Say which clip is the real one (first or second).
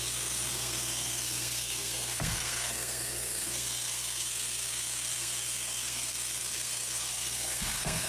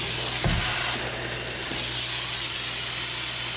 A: second